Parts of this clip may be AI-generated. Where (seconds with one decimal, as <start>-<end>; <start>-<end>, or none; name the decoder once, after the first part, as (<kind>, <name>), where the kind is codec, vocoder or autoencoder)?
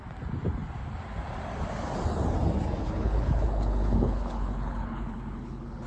2.8-5.9 (codec, HILCodec)